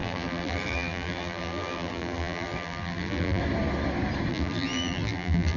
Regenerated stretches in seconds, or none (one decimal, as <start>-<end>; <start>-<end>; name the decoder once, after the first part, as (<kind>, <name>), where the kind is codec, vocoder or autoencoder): 0.0-3.4 (vocoder, BigVGAN v2); 4.3-5.6